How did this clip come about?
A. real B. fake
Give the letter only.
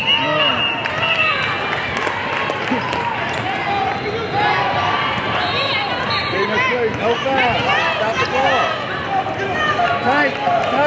A